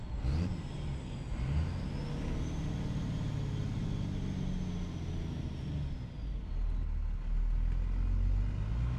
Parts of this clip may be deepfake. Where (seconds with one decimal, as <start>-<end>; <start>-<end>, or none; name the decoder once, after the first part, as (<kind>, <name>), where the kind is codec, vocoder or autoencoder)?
none